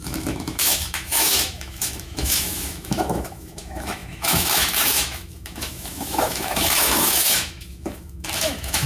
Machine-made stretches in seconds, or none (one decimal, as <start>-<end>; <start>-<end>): 0.0-8.9